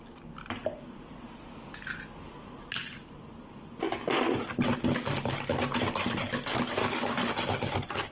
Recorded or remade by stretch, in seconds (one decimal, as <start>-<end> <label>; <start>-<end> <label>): 0.0-6.8 recorded; 6.8-7.3 remade; 7.3-8.1 recorded